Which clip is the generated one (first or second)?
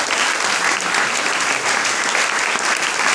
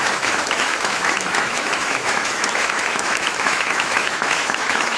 second